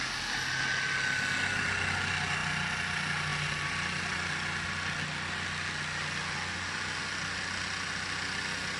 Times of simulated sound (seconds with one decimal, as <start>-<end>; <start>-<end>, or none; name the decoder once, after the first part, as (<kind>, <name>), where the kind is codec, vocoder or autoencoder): none